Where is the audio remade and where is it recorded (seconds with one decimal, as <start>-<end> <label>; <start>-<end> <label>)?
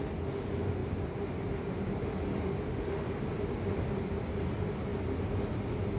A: 0.0-6.0 recorded